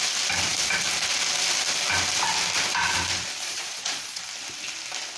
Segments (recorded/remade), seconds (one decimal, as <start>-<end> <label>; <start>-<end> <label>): 0.0-3.4 recorded; 3.4-4.2 remade; 4.2-5.2 recorded